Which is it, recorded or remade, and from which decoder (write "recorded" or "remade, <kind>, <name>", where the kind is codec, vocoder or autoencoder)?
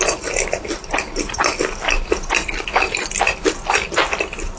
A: recorded